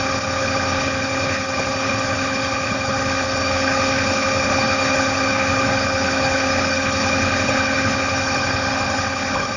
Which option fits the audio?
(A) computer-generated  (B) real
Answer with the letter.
A